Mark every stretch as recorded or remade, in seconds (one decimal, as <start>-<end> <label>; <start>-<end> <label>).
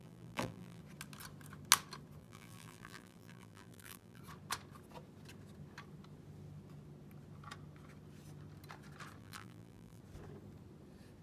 0.0-0.8 remade; 0.8-2.2 recorded; 2.2-4.2 remade; 4.2-9.2 recorded; 9.2-10.0 remade; 10.0-11.2 recorded